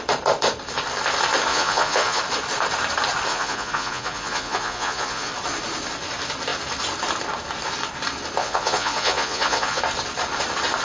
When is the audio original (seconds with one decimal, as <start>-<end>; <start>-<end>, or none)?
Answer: 0.0-1.5; 2.2-3.3; 5.3-8.4; 9.8-10.8